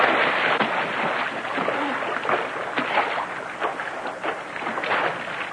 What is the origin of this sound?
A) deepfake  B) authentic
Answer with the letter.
B